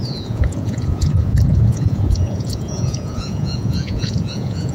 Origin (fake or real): fake